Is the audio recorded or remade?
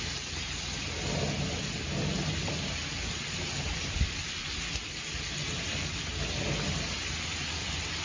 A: recorded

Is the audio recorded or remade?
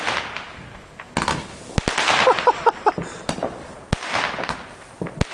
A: recorded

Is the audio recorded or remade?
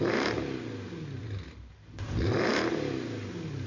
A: recorded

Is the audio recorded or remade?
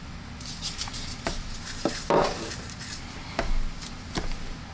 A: recorded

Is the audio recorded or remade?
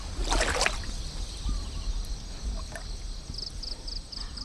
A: recorded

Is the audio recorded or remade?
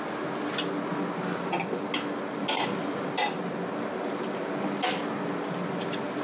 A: recorded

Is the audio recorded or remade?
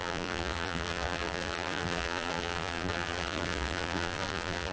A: remade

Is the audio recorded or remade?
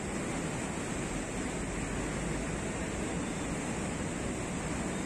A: recorded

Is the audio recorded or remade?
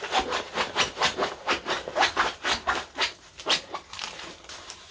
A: remade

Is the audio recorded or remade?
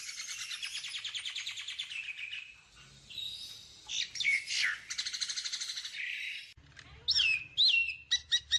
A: recorded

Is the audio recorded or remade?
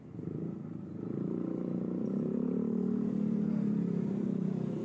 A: remade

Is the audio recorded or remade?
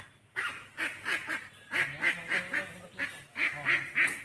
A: recorded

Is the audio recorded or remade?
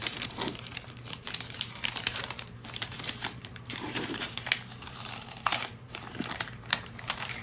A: remade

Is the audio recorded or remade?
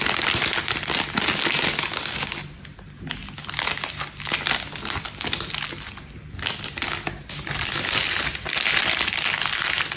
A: recorded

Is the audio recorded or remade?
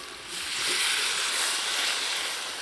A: recorded